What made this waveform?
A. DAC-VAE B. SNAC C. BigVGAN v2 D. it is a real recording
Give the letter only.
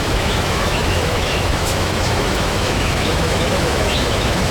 A